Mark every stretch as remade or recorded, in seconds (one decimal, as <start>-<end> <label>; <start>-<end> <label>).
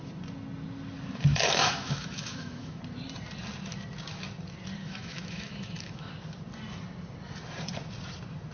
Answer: 0.0-1.3 recorded; 1.3-2.8 remade; 2.8-4.8 recorded; 4.8-6.1 remade; 6.1-8.5 recorded